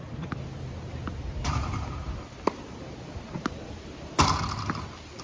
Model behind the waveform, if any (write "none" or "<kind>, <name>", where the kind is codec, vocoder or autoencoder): none